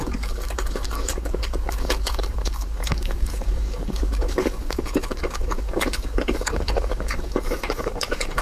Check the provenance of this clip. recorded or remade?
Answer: remade